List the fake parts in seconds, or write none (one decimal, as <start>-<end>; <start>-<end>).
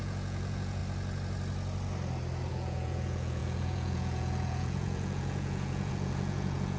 0.0-0.8; 2.5-6.8